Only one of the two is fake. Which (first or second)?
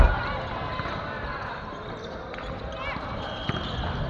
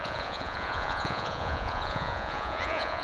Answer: second